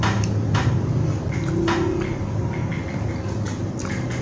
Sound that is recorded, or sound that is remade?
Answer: recorded